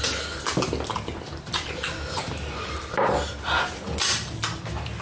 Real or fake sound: real